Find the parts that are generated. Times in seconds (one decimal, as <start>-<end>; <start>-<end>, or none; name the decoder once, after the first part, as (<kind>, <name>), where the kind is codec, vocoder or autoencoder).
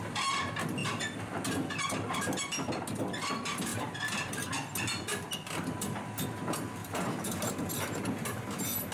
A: 3.7-4.3 (vocoder, BigVGAN v2); 6.8-7.7